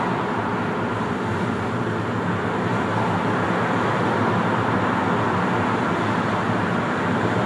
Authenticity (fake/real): real